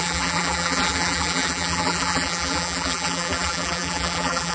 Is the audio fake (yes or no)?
yes